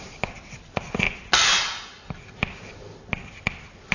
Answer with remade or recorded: recorded